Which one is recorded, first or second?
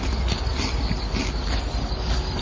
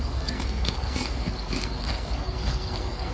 first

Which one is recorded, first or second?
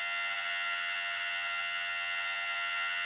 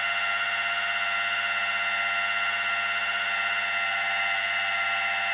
second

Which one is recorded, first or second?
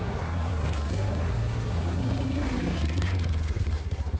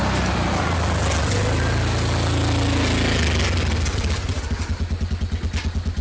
second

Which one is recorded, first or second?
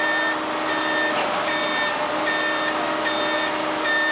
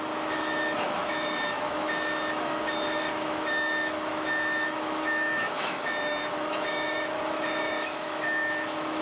first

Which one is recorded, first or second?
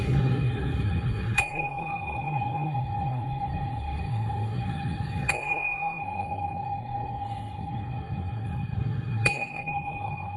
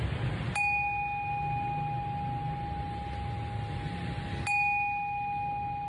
second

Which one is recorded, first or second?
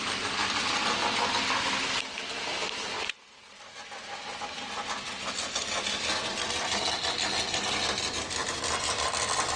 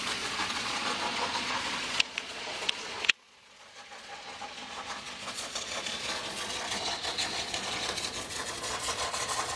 first